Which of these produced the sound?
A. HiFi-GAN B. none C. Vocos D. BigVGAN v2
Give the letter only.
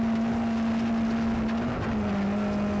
B